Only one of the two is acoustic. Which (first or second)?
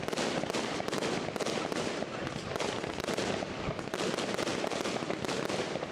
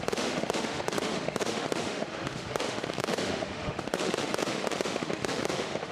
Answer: first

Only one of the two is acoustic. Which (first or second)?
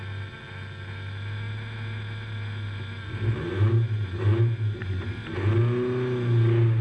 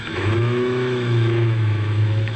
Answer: first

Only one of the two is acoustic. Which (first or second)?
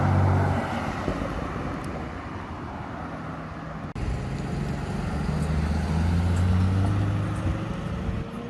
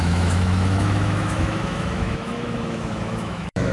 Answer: first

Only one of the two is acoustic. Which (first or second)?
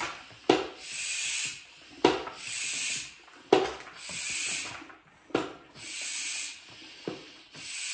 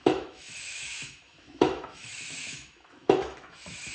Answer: first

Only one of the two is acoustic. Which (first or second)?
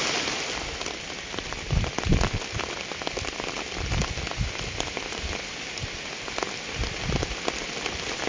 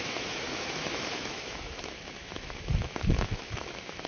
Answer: first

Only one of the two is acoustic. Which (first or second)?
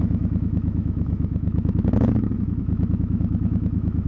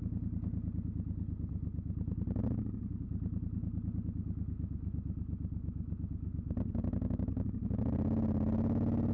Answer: second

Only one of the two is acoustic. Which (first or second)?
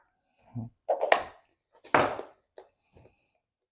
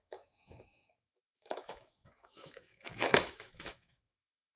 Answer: first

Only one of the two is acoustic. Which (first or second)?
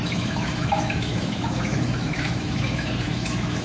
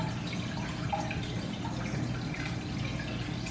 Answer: second